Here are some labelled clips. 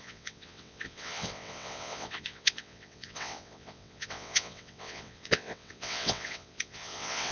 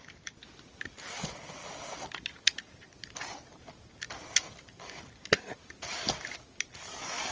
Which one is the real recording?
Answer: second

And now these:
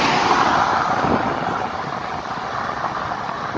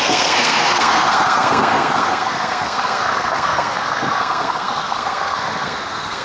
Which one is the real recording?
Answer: first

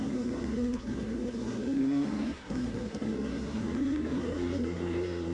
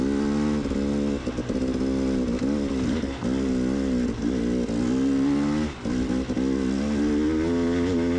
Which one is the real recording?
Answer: second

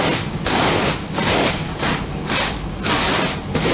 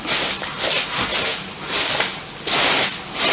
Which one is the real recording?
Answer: second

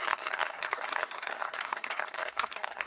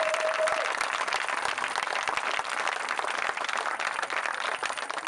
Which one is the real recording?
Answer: second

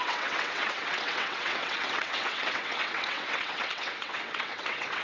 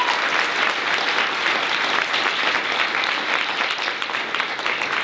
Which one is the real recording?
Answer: second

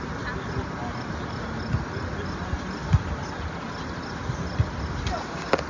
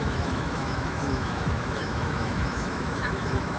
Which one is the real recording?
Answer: first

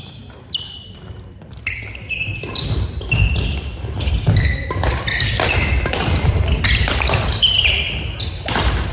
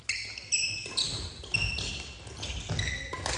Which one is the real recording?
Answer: second